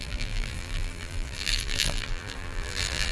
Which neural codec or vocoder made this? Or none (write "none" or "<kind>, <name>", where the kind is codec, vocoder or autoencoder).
vocoder, BigVGAN v2